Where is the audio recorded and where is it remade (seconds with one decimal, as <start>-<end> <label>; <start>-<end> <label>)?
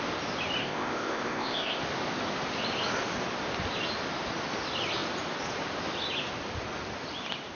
0.0-0.6 recorded; 0.6-1.8 remade; 1.8-7.5 recorded